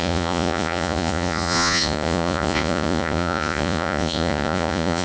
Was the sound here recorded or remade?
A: remade